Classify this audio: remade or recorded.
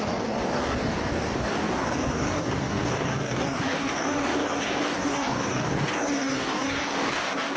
remade